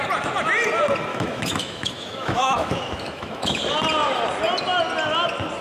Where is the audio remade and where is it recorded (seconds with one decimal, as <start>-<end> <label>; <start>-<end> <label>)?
0.0-1.1 recorded; 1.1-3.6 remade; 3.6-5.6 recorded